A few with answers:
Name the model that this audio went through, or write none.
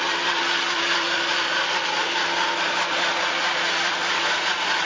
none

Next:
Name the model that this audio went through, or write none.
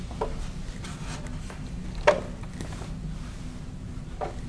none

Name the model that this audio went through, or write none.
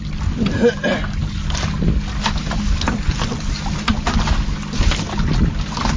none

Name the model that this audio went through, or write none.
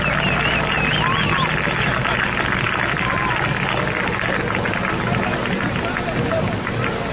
none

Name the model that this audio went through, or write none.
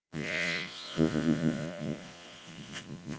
vocoder, Vocos